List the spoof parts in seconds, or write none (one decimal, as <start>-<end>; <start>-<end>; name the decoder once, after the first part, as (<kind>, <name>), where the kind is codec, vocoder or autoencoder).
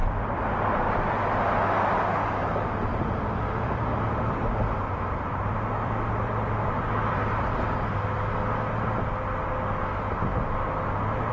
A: 0.0-1.1 (vocoder, BigVGAN v2); 2.9-8.0